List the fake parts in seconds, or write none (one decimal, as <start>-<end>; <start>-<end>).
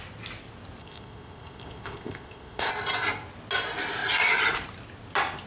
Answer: 0.8-2.7